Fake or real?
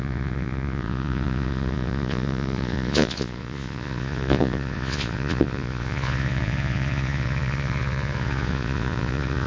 fake